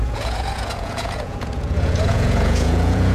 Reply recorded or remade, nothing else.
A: remade